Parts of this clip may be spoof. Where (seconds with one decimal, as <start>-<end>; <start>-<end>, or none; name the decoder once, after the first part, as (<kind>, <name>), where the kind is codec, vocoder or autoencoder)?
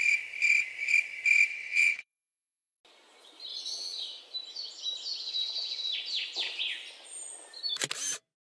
1.5-2.8 (vocoder, WaveNeXt); 3.5-4.2